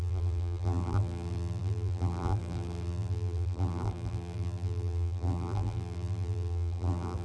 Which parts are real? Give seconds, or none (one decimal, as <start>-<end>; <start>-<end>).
none